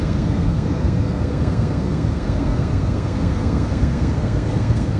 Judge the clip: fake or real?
fake